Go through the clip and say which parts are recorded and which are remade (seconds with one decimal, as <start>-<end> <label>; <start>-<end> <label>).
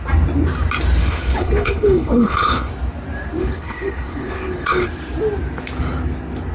0.0-1.0 recorded; 1.0-2.7 remade; 2.7-3.4 recorded; 3.4-4.9 remade; 4.9-6.5 recorded